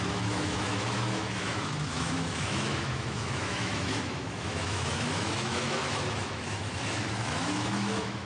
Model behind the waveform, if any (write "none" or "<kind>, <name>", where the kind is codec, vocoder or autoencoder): autoencoder, DAC-VAE